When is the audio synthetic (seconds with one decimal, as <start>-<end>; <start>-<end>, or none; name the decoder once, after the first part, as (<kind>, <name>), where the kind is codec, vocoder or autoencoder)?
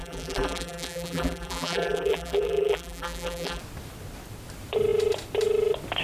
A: 0.0-3.6 (vocoder, BigVGAN v2)